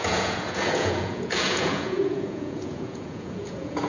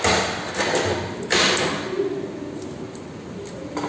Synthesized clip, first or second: first